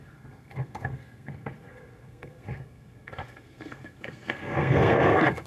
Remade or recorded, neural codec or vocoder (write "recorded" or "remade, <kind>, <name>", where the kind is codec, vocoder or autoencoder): remade, codec, SNAC